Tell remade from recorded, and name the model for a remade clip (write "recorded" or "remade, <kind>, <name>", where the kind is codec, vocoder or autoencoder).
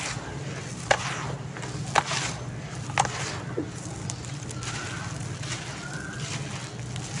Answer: recorded